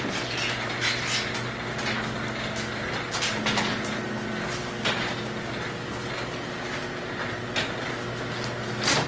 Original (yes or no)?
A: yes